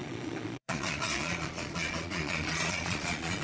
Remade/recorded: remade